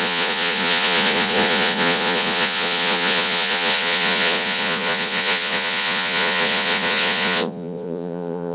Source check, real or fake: fake